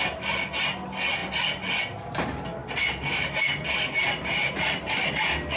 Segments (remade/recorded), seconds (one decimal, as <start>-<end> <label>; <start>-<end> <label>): 0.0-5.6 recorded